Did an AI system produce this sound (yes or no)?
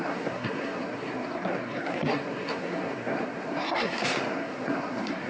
yes